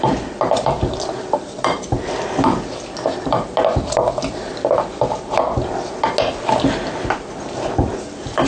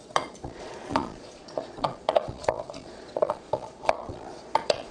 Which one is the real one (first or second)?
first